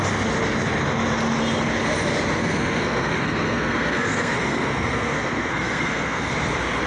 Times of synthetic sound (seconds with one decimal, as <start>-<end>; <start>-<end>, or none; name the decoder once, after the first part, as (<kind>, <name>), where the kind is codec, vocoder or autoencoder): 2.4-6.3 (codec, SNAC)